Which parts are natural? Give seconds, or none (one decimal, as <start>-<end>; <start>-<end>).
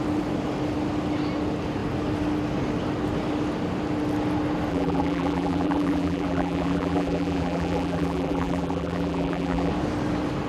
0.0-4.7; 9.7-10.5